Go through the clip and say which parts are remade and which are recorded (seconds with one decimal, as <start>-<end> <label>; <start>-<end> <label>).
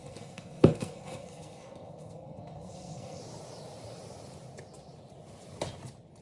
0.0-3.2 remade; 3.2-6.2 recorded